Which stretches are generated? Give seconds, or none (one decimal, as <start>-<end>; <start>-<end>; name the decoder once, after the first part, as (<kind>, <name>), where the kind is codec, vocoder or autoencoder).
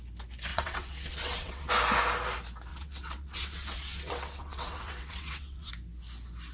0.5-1.7 (vocoder, WaveNeXt); 2.7-5.7